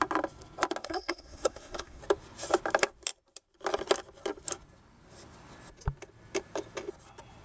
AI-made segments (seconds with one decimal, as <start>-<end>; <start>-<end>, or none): 0.8-2.0